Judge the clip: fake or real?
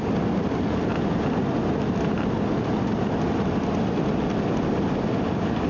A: real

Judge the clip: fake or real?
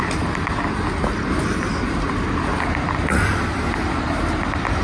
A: real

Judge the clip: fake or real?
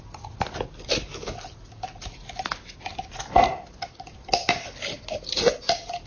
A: real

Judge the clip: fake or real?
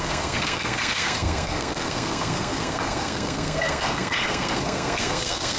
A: fake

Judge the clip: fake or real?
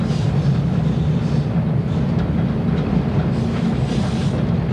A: real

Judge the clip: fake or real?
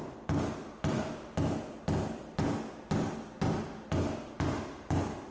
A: real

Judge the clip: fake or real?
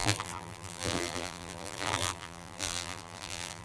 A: fake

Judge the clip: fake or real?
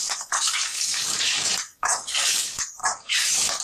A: fake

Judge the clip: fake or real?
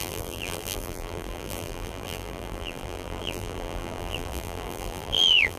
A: fake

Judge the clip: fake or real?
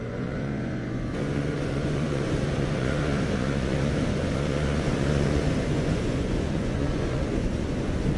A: fake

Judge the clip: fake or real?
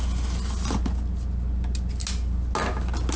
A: real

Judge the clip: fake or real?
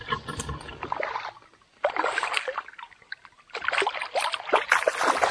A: real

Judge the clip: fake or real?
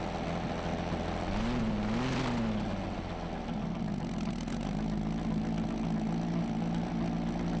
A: real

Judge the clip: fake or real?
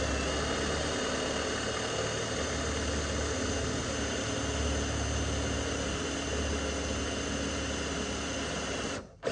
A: real